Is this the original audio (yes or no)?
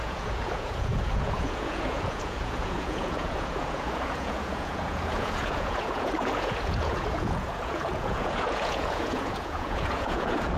no